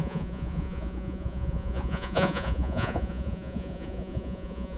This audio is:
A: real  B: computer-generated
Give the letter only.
B